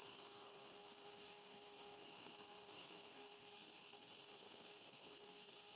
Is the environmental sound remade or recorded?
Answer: remade